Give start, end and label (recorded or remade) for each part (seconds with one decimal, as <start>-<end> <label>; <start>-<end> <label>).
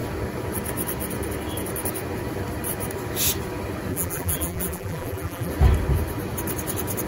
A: 0.0-3.9 recorded; 3.9-5.5 remade; 5.5-7.1 recorded